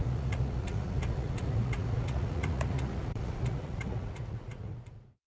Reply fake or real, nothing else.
fake